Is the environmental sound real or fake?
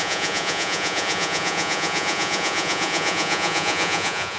fake